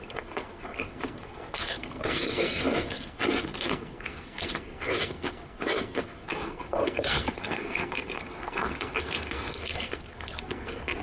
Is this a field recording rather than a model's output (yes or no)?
no